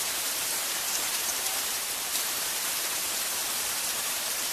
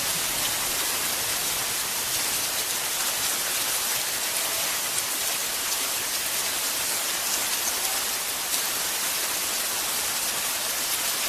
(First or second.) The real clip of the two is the second